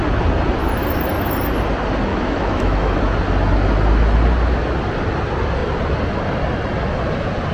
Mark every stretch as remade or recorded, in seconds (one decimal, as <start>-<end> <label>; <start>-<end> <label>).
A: 0.0-2.1 recorded; 2.1-3.0 remade; 3.0-7.5 recorded